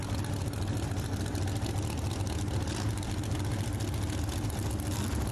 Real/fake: real